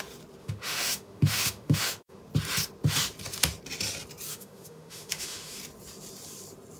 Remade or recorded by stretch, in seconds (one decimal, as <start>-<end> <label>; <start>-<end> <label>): 0.0-0.4 recorded; 0.4-2.2 remade; 2.2-4.3 recorded; 4.3-5.6 remade; 5.6-6.8 recorded

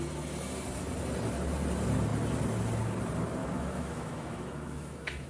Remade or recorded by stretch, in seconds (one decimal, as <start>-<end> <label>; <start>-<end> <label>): 0.0-3.4 recorded; 3.4-5.3 remade

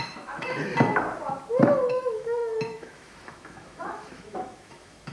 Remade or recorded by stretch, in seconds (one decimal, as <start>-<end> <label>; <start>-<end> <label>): 0.0-0.7 remade; 0.7-1.7 recorded; 1.7-5.1 remade

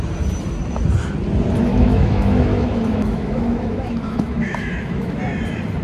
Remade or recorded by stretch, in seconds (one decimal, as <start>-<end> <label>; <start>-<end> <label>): 0.0-1.7 recorded; 1.7-5.2 remade; 5.2-5.8 recorded

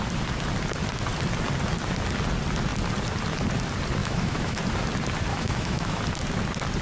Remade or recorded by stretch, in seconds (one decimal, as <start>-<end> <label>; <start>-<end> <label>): 0.0-4.0 recorded; 4.0-4.6 remade; 4.6-5.3 recorded; 5.3-6.0 remade; 6.0-6.8 recorded

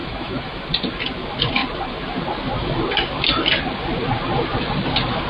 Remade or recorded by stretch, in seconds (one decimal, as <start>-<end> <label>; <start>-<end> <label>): 0.0-0.6 remade; 0.6-5.3 recorded

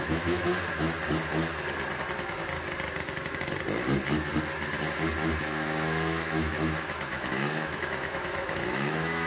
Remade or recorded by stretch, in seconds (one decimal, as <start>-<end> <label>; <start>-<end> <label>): 0.0-0.5 remade; 0.5-5.4 recorded; 5.4-9.3 remade